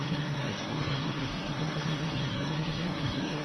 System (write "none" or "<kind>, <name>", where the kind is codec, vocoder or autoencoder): codec, SNAC